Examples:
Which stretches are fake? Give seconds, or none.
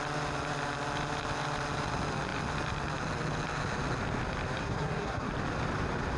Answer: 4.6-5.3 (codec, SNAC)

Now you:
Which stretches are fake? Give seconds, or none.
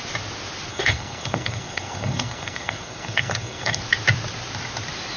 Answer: 0.7-3.8 (codec, SNAC)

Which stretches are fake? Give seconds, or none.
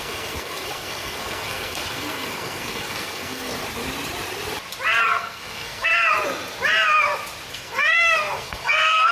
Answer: 0.0-3.5 (codec, SNAC); 5.0-5.9; 7.5-9.1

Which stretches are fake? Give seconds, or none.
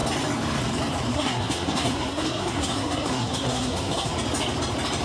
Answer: 1.1-4.1 (codec, SNAC)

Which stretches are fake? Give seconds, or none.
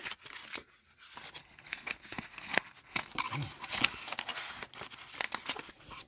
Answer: 1.4-3.1 (codec, SNAC)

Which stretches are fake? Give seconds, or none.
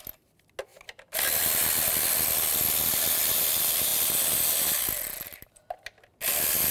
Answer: none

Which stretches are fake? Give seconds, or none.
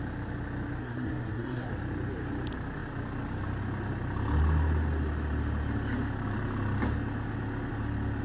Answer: 0.8-1.7 (codec, SNAC)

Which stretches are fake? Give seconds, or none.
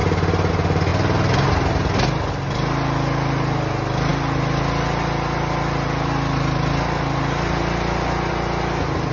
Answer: none